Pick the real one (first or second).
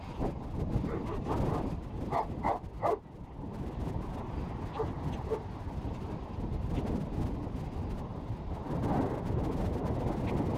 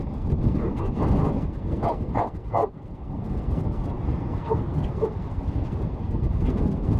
first